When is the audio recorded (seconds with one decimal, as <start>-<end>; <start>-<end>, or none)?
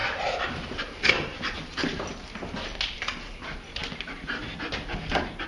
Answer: 2.0-5.5